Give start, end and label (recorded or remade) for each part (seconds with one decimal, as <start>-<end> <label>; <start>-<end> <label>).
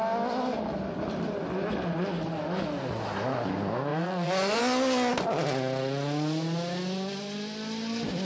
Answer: 0.0-3.9 recorded; 3.9-4.6 remade; 4.6-8.2 recorded